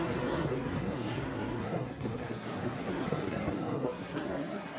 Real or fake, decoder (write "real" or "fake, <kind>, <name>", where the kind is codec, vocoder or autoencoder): fake, codec, SNAC